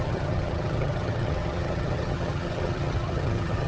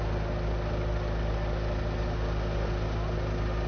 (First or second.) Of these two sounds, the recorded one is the second